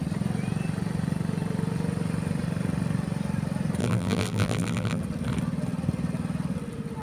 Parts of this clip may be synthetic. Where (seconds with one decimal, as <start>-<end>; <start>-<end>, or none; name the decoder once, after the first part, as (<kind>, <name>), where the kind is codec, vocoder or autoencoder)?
3.8-5.0 (vocoder, BigVGAN v2)